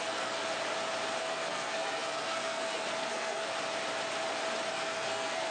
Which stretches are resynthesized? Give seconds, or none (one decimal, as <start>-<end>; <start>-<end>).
0.0-0.4; 1.2-3.5; 4.7-5.5